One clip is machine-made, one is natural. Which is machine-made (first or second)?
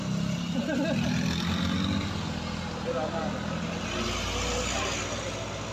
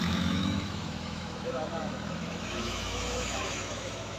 second